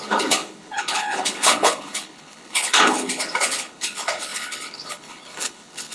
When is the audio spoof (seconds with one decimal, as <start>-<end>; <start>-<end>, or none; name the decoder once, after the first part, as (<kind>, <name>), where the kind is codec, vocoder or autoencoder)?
0.0-5.9 (codec, HILCodec)